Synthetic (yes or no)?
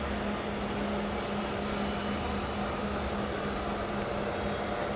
no